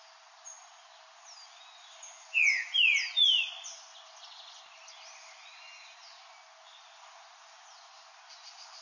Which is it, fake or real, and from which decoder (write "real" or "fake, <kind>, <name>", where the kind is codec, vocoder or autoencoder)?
real